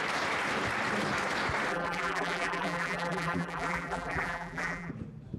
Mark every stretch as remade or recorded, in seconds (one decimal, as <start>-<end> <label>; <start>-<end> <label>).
0.0-1.7 recorded; 1.7-4.9 remade; 4.9-5.4 recorded